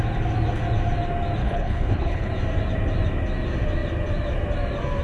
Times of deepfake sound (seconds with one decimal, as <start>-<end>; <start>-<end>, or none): 1.4-2.3